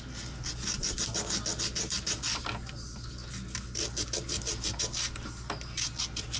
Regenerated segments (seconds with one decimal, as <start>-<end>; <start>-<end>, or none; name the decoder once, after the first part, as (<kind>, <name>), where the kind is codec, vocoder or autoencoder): none